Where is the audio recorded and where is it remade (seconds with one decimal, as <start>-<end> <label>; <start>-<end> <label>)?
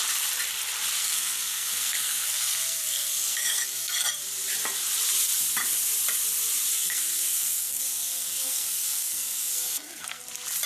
0.0-1.0 recorded; 1.0-4.2 remade; 4.2-6.7 recorded; 6.7-10.2 remade; 10.2-10.7 recorded